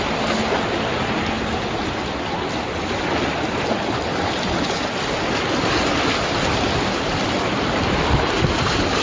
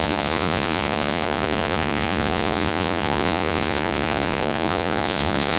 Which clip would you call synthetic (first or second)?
second